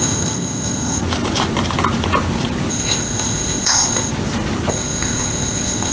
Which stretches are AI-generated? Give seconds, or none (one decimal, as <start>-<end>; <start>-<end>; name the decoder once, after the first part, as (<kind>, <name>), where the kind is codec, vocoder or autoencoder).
0.0-1.0 (codec, ZipCodec); 2.7-4.1; 4.7-5.9